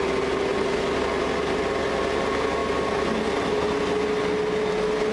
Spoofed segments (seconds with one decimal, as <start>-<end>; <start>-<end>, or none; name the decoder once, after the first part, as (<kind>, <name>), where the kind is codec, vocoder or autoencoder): none